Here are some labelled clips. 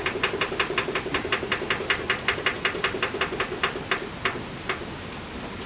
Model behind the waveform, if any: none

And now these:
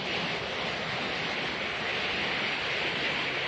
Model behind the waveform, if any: none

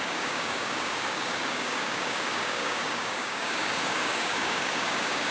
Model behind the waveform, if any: codec, DAC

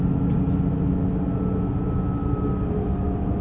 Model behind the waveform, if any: none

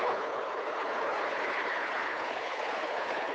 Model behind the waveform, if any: codec, HILCodec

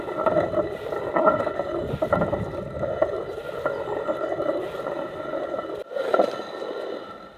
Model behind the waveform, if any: none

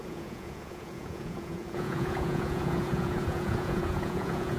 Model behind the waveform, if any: vocoder, Vocos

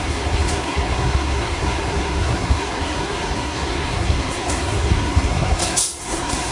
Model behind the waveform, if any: codec, SNAC